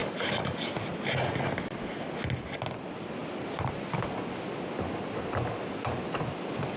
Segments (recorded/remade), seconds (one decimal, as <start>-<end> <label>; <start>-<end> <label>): 0.0-0.7 remade; 0.7-6.8 recorded